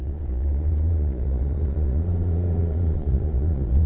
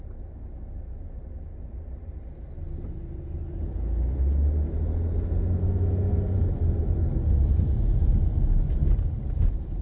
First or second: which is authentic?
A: second